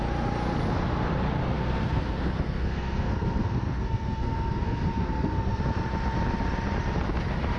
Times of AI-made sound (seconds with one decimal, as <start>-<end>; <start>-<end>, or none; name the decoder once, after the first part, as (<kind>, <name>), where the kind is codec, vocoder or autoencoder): 1.4-5.6 (codec, SNAC)